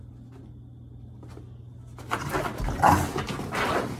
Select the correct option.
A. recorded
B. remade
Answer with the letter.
A